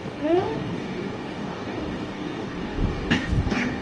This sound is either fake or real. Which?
fake